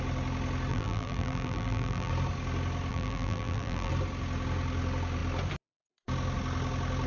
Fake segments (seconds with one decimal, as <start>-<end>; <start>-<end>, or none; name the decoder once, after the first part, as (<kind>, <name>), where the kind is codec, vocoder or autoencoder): 0.7-2.1 (vocoder, BigVGAN v2); 2.9-3.9